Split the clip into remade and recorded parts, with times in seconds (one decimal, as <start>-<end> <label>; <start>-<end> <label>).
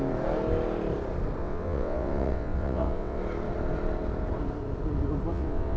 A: 0.0-1.4 recorded; 1.4-3.2 remade; 3.2-5.3 recorded; 5.3-5.8 remade